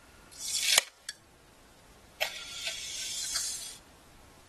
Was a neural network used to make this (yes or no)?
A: no